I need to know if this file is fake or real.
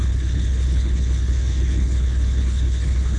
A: fake